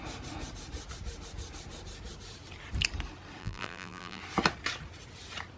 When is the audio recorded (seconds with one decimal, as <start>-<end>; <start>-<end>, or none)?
0.0-3.4; 4.2-5.6